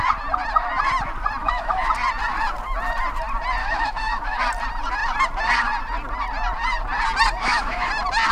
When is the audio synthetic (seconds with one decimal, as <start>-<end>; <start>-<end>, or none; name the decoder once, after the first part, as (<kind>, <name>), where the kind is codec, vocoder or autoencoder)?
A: 1.4-1.9 (autoencoder, DAC-VAE); 3.6-4.4; 7.4-7.9